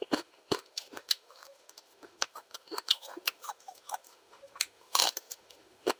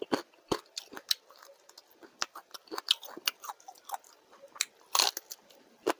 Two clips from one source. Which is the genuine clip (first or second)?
second